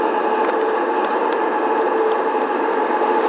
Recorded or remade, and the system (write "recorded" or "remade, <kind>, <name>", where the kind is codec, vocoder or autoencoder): recorded